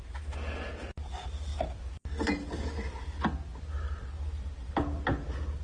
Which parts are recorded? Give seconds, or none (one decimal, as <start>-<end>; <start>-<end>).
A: 0.0-5.6

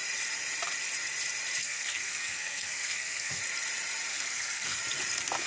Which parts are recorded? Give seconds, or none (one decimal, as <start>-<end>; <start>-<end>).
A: 0.0-1.6; 3.4-4.1; 4.8-5.5